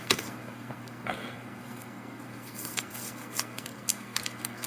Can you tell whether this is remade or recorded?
remade